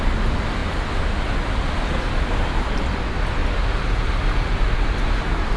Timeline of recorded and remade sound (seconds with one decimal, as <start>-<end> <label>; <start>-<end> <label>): 0.0-3.4 recorded; 3.4-5.6 remade